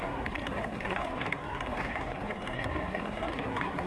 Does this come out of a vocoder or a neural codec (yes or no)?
yes